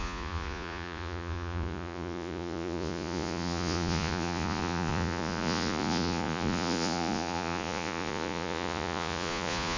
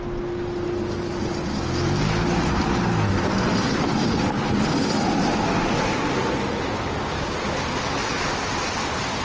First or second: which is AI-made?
first